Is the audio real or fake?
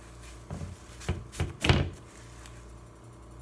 real